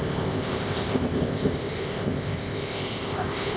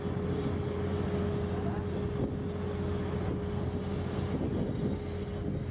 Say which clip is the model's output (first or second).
first